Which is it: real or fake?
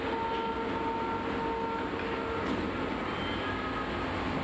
real